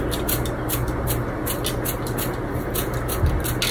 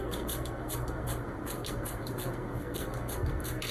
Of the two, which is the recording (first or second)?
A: first